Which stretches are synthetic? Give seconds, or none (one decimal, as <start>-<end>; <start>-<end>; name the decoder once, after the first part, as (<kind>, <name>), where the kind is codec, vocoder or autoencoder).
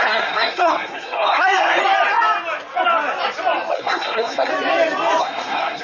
0.0-1.8 (codec, SNAC); 3.7-4.5; 5.2-5.8